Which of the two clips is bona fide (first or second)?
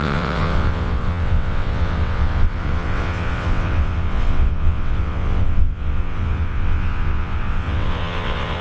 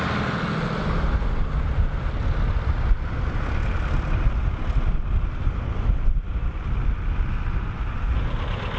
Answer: second